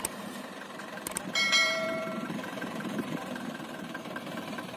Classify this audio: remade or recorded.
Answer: remade